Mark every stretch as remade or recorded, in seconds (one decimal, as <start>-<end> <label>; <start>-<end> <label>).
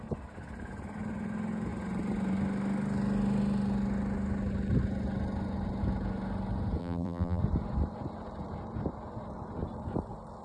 0.0-6.8 recorded; 6.8-7.4 remade; 7.4-10.4 recorded